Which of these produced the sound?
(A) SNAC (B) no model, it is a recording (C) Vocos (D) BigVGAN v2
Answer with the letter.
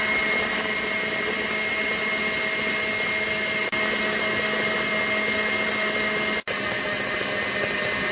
B